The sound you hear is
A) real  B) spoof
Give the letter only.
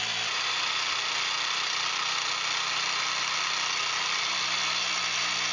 A